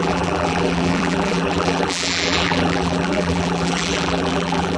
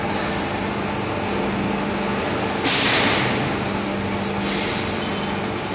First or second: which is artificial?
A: first